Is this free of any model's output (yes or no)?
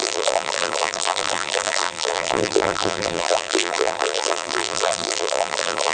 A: no